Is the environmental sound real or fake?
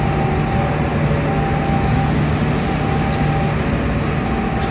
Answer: real